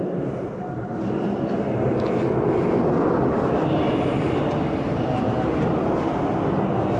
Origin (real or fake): real